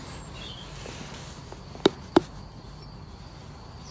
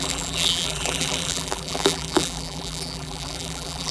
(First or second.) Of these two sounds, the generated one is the second